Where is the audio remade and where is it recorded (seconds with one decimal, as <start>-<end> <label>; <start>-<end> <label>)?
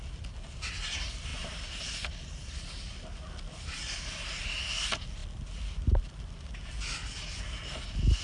0.0-8.2 recorded